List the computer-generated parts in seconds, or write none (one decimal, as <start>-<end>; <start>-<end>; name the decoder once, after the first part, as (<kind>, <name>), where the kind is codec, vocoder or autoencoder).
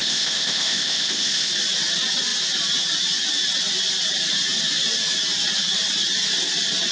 0.0-1.5 (codec, ZipCodec)